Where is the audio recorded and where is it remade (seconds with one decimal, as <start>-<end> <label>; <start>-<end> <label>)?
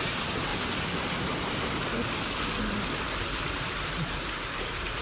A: 0.0-0.5 remade; 0.5-3.5 recorded; 3.5-5.0 remade